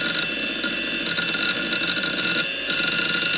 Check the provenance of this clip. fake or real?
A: real